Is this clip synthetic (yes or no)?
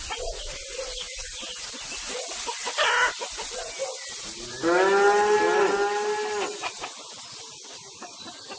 no